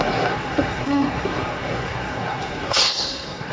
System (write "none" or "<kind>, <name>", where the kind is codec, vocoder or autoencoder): codec, SNAC